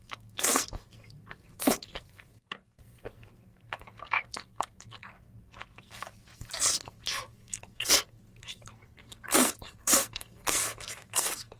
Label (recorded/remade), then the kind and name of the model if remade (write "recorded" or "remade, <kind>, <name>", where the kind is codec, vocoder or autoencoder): remade, codec, SNAC